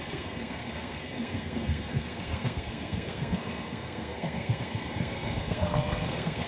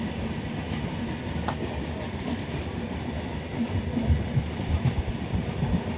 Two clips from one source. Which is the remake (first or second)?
first